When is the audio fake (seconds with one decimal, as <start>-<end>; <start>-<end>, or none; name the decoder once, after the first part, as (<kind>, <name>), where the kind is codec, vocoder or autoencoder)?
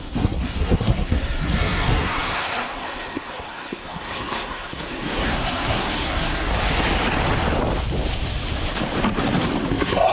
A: 0.0-6.5 (codec, SNAC); 9.7-10.1